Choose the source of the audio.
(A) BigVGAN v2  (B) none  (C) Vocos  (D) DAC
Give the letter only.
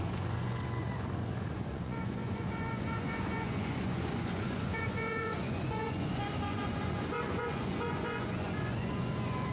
C